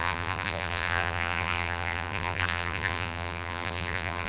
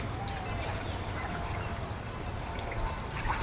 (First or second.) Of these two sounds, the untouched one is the second